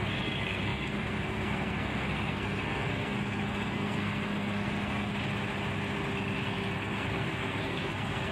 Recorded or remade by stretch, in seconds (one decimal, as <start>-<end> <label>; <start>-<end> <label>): 0.0-5.1 remade; 5.1-6.4 recorded; 6.4-8.3 remade